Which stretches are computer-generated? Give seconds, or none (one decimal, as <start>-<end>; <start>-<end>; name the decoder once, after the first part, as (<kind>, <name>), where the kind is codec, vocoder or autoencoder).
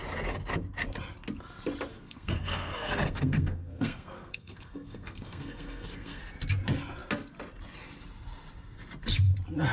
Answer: 1.9-6.2 (codec, SNAC)